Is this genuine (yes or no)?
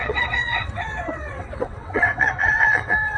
no